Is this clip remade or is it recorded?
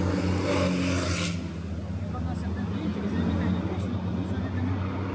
recorded